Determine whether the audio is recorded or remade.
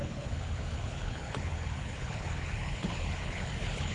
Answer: remade